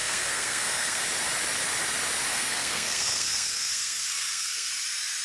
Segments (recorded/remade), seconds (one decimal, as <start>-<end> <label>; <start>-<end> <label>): 0.0-1.0 remade; 1.0-2.3 recorded; 2.3-4.7 remade; 4.7-5.2 recorded